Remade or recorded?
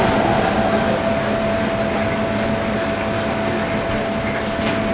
recorded